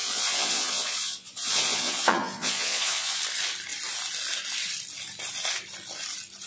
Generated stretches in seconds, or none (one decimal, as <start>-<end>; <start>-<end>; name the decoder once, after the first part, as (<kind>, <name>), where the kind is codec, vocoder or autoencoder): 0.0-3.2 (vocoder, Vocos)